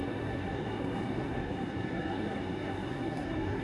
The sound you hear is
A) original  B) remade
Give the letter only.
B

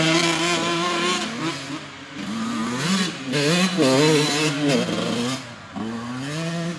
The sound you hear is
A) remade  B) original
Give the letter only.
B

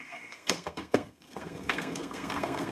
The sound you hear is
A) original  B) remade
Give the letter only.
B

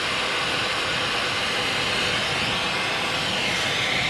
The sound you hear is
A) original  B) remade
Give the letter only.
A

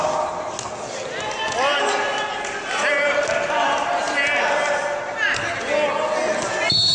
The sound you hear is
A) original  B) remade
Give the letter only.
A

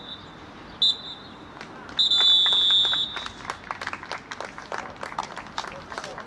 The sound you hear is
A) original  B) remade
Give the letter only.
A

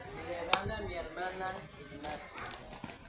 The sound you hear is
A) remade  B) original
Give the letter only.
B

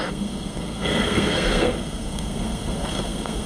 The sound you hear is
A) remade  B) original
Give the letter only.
A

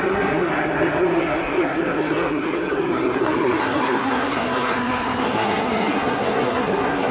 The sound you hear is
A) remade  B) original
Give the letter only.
A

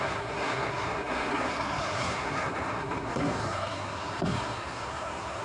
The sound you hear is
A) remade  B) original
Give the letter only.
A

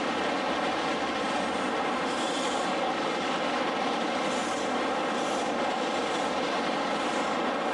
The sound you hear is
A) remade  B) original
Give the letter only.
B